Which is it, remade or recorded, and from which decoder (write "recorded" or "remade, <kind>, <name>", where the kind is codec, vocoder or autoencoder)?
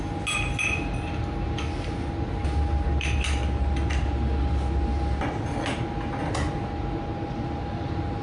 recorded